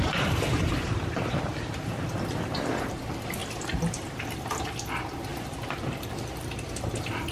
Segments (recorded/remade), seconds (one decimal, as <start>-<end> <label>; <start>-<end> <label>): 0.0-3.4 remade; 3.4-4.6 recorded; 4.6-5.3 remade; 5.3-5.8 recorded; 5.8-7.3 remade